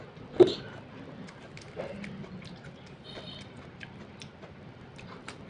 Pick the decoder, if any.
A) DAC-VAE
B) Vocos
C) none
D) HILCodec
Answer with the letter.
C